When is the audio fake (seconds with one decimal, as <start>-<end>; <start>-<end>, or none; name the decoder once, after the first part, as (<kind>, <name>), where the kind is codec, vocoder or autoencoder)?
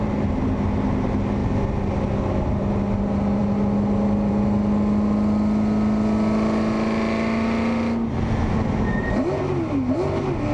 none